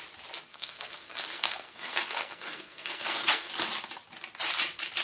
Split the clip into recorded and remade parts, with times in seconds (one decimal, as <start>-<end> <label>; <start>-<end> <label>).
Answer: 0.0-0.5 recorded; 0.5-3.5 remade; 3.5-5.0 recorded